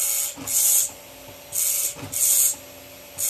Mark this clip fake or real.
real